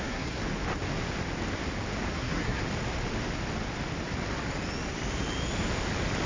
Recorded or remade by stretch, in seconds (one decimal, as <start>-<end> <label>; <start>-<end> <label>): 0.0-0.4 remade; 0.4-2.1 recorded; 2.1-2.6 remade; 2.6-6.3 recorded